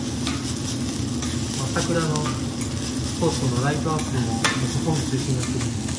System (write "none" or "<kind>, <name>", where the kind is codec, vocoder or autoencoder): none